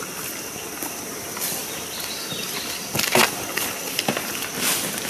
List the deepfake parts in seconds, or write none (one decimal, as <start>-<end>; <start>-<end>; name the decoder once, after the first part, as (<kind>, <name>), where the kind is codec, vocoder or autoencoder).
0.0-1.1 (vocoder, BigVGAN v2); 1.6-4.5